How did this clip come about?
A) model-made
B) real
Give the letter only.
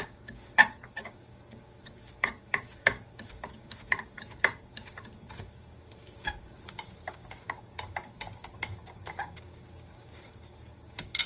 A